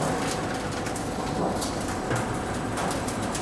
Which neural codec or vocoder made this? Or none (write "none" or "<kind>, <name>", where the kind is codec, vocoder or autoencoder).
none